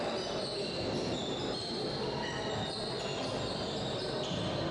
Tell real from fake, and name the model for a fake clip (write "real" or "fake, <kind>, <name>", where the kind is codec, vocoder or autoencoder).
real